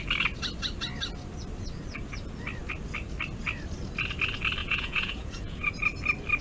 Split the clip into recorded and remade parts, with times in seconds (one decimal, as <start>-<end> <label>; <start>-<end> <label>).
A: 0.0-4.6 recorded; 4.6-5.7 remade; 5.7-6.4 recorded